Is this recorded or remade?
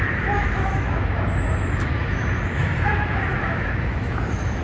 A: remade